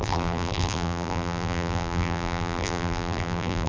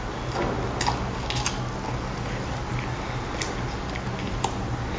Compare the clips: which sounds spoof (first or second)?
first